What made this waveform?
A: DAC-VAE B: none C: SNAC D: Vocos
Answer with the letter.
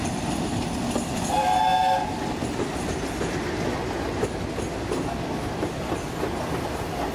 B